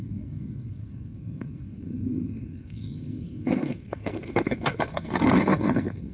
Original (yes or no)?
no